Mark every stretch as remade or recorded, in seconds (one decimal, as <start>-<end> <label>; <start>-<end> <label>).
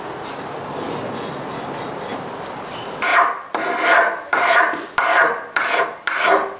0.0-6.6 recorded